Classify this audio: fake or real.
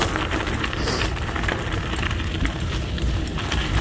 real